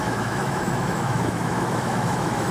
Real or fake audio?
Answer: fake